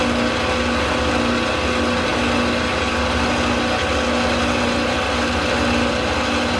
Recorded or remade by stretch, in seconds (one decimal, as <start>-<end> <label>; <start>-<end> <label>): 0.0-6.6 recorded